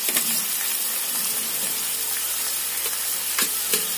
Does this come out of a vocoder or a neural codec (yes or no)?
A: no